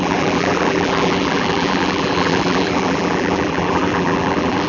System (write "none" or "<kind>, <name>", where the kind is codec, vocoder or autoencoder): vocoder, BigVGAN v2